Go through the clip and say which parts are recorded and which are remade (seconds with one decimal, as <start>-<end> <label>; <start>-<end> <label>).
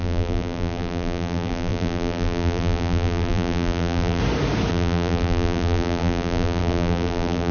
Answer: 0.0-4.2 remade; 4.2-4.7 recorded; 4.7-7.5 remade